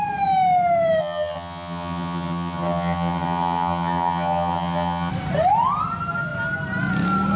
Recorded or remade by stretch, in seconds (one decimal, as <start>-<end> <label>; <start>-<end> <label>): 0.0-1.0 recorded; 1.0-5.1 remade; 5.1-7.4 recorded